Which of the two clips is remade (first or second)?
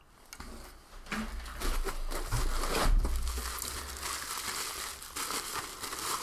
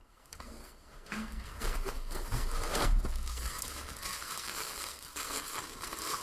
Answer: second